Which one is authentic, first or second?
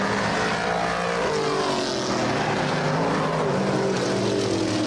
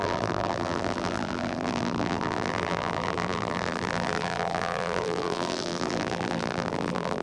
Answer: first